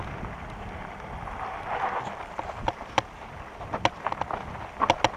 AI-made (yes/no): no